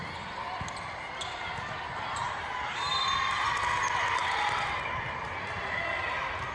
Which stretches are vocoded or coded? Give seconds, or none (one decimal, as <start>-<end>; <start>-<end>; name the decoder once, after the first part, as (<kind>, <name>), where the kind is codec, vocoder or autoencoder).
2.2-2.8 (vocoder, BigVGAN v2); 4.2-5.3